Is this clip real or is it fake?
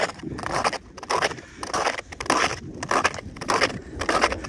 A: real